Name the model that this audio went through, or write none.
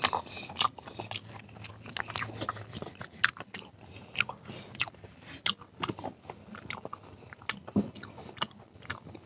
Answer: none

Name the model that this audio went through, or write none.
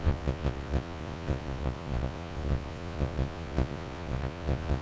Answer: vocoder, Vocos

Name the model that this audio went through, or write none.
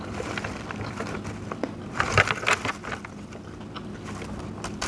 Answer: none